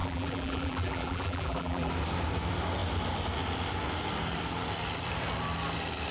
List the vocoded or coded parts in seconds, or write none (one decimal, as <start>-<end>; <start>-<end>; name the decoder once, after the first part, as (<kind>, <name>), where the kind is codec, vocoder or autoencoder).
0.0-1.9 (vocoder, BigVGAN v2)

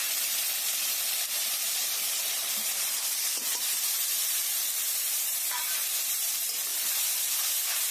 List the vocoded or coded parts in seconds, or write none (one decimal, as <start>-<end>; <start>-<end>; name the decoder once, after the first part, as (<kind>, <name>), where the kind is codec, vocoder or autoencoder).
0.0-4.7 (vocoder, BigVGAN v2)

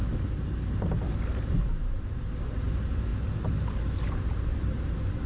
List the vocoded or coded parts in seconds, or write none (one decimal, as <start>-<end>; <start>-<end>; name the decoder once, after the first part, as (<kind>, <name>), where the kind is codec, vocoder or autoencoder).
1.5-5.3 (vocoder, BigVGAN v2)

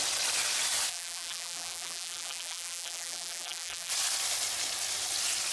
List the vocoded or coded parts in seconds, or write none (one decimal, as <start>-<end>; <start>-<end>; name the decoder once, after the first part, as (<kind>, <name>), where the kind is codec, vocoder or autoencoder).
0.9-3.9 (vocoder, BigVGAN v2)